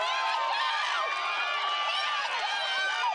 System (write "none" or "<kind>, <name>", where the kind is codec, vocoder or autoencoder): none